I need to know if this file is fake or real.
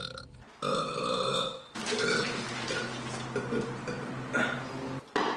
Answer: real